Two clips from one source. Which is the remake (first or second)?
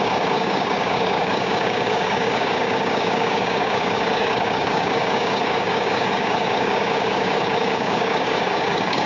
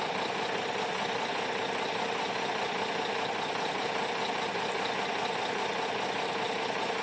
first